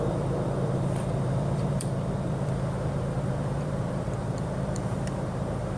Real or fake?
fake